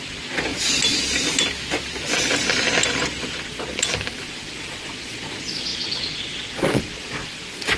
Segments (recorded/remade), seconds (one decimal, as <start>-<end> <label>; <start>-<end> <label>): 0.0-0.5 remade; 0.5-3.0 recorded; 3.0-3.7 remade; 3.7-4.2 recorded; 4.2-7.8 remade